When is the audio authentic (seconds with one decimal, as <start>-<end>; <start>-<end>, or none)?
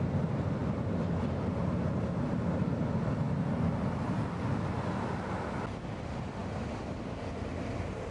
0.0-8.1